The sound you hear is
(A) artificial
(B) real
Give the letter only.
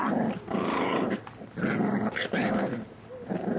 B